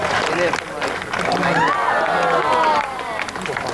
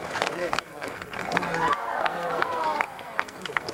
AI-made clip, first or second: second